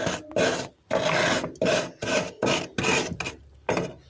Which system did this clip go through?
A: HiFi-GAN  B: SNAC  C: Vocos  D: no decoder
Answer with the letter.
D